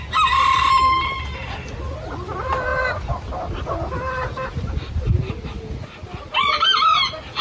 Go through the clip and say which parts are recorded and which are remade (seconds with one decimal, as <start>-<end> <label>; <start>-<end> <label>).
0.0-7.4 recorded